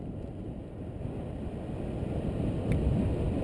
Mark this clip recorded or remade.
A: recorded